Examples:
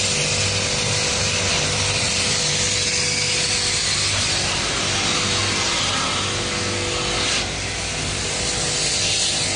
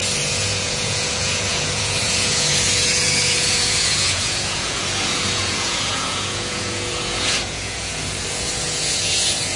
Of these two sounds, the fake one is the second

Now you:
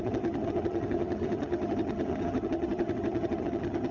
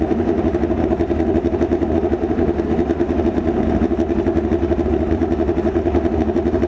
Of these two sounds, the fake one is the first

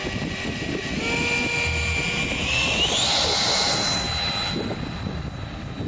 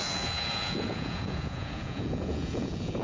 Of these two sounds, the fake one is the second